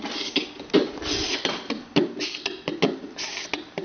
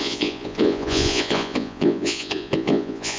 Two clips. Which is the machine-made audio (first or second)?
second